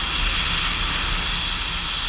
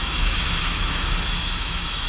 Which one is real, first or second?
first